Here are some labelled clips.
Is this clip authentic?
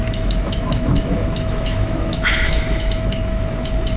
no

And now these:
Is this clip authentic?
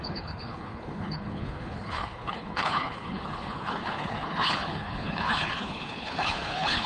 no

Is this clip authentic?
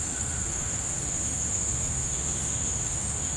no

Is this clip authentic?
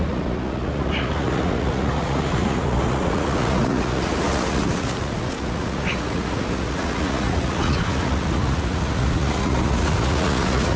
no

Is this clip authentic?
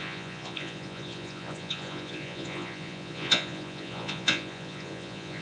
no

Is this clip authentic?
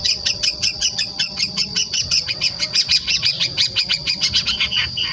no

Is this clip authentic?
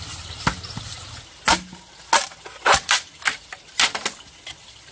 yes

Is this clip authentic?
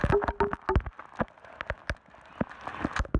yes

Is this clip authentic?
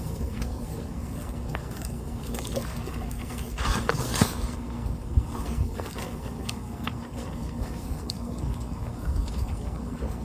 no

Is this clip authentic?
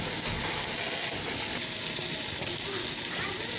yes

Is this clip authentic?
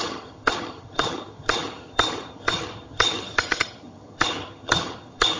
no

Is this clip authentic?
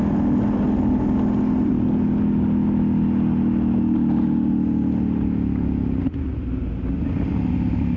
yes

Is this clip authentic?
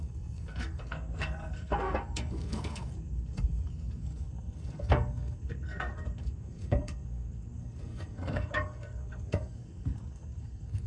no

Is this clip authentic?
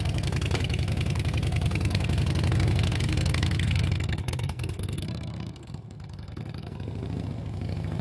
no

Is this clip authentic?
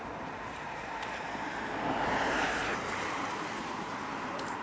no